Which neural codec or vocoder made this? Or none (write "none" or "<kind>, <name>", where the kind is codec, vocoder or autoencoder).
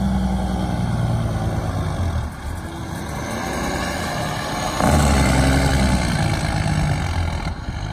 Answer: none